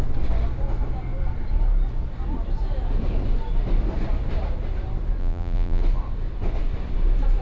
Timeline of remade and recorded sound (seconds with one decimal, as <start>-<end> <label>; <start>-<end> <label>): 0.0-5.2 recorded; 5.2-5.8 remade; 5.8-7.4 recorded